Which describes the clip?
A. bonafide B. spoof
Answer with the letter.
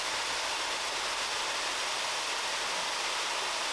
A